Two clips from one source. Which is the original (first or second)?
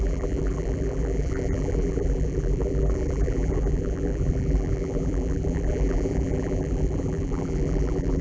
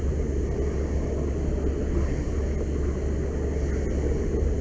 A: second